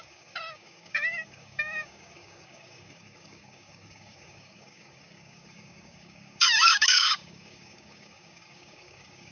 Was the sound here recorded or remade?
remade